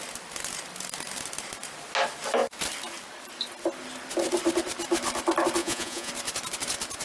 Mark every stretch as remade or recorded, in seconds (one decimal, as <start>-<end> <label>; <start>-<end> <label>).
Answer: 0.0-5.6 recorded; 5.6-6.1 remade; 6.1-7.0 recorded